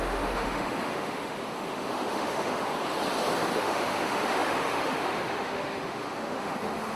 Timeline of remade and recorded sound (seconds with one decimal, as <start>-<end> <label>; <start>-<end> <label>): 0.0-2.7 remade; 2.7-3.5 recorded; 3.5-7.0 remade